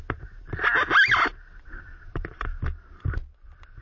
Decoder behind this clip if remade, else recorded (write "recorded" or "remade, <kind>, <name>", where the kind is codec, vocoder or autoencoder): recorded